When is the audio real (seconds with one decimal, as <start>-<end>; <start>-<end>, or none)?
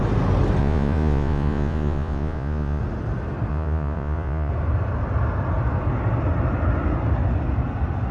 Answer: 0.0-0.6; 2.8-3.5; 4.5-8.1